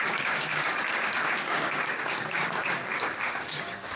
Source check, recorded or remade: remade